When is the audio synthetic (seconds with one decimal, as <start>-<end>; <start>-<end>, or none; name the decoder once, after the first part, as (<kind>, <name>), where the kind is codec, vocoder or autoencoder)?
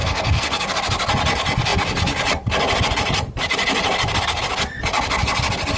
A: 0.0-0.7 (codec, SNAC)